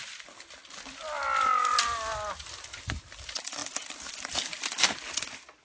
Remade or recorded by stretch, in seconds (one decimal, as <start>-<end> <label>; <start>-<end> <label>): 0.0-5.6 recorded